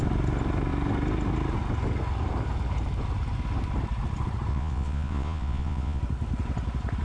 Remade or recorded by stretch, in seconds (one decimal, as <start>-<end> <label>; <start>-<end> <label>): 0.0-4.5 recorded; 4.5-6.0 remade; 6.0-7.0 recorded